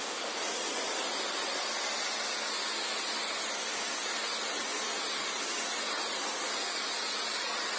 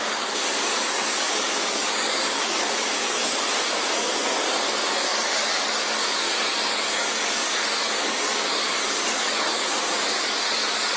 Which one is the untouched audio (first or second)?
first